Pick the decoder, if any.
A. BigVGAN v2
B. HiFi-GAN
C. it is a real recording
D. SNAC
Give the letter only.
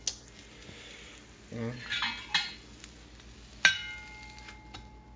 C